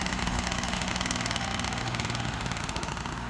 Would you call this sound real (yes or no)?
no